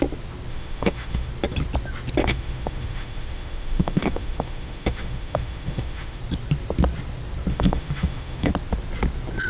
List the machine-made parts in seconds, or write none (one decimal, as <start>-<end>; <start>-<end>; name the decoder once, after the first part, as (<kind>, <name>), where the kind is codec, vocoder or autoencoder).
0.5-1.3 (autoencoder, DAC-VAE); 2.2-6.2; 7.5-8.5